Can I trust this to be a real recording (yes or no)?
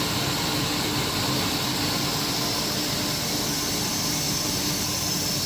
yes